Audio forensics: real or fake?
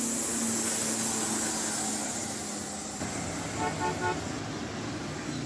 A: real